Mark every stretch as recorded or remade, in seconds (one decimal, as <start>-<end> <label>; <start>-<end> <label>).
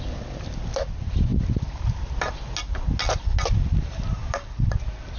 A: 0.0-5.2 recorded